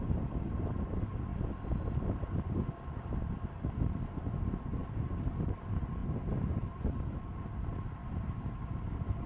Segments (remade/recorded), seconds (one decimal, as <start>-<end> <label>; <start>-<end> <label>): 0.0-4.8 recorded; 4.8-5.4 remade; 5.4-6.0 recorded; 6.0-6.9 remade; 6.9-8.0 recorded; 8.0-9.3 remade

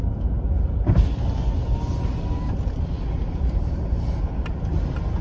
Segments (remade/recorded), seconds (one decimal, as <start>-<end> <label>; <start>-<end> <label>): 0.0-5.2 recorded

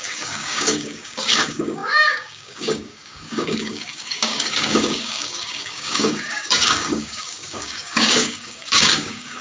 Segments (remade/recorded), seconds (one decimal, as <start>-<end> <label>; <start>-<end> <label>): 0.0-9.4 remade

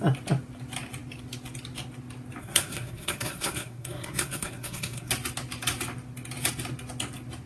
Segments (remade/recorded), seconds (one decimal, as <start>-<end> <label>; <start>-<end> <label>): 0.0-2.4 recorded; 2.4-5.1 remade; 5.1-7.5 recorded

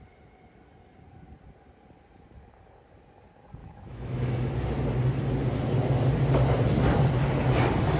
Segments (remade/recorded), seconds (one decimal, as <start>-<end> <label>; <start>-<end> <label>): 0.0-3.6 recorded; 3.6-4.5 remade; 4.5-8.0 recorded

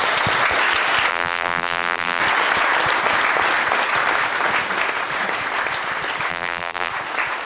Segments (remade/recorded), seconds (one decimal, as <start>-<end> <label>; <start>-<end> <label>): 0.0-1.1 recorded; 1.1-2.2 remade; 2.2-6.3 recorded; 6.3-6.9 remade; 6.9-7.5 recorded

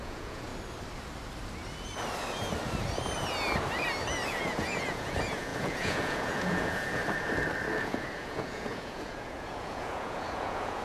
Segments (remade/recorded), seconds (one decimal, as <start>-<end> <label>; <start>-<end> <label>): 0.0-0.5 remade; 0.5-4.3 recorded; 4.3-7.0 remade; 7.0-7.8 recorded; 7.8-10.8 remade

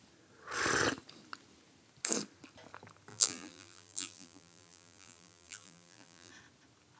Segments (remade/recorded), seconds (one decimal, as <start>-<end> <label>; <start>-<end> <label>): 0.0-3.1 recorded; 3.1-6.3 remade; 6.3-7.0 recorded